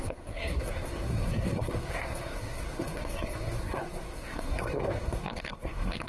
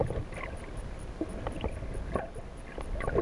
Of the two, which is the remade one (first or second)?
first